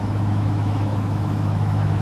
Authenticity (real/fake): fake